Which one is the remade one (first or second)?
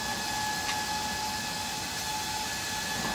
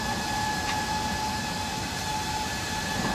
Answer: second